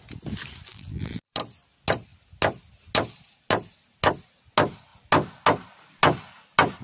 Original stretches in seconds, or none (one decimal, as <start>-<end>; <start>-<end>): 0.0-0.7; 1.3-6.8